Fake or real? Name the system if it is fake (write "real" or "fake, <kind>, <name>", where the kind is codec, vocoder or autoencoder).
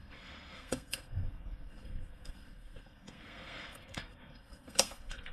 fake, codec, SNAC